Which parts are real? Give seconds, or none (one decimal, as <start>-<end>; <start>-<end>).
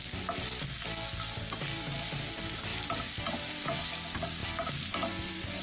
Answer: 0.0-5.6